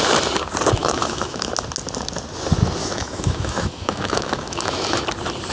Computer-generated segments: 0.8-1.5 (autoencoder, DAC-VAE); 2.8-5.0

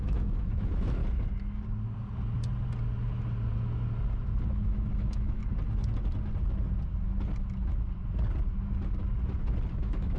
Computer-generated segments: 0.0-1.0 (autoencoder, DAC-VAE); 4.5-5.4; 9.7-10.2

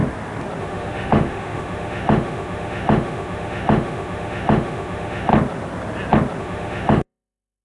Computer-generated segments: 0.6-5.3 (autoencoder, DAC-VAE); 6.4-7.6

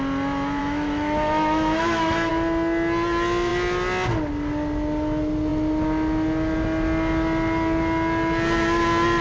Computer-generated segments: 0.6-2.3 (autoencoder, DAC-VAE)

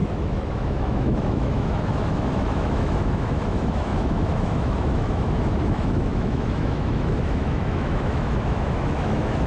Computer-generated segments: 0.0-9.5 (autoencoder, DAC-VAE)